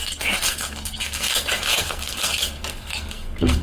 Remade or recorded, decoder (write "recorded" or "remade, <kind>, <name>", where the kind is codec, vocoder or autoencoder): remade, codec, SNAC